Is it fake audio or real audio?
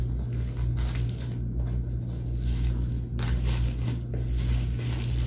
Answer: real